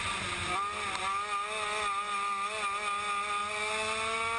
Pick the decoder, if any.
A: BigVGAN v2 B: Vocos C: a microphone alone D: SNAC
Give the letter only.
C